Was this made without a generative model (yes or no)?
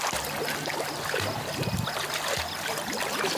yes